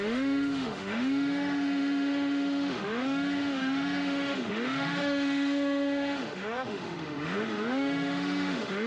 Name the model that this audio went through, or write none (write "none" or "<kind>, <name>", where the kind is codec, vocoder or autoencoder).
autoencoder, DAC-VAE